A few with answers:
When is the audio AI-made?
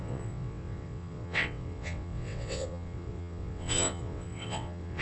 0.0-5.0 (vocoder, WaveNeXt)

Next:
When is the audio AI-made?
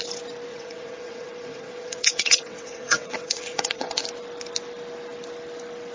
0.5-4.0 (vocoder, WaveNeXt)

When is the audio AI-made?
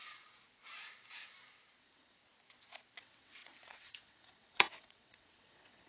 1.8-2.2 (vocoder, WaveNeXt); 3.0-5.9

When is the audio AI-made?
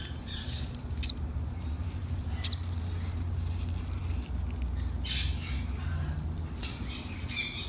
none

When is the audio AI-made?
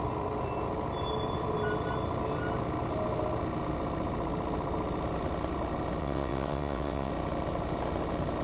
6.0-7.1 (vocoder, WaveNeXt)